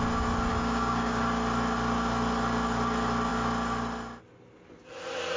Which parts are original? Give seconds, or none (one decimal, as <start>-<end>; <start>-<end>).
0.0-0.5; 1.2-5.4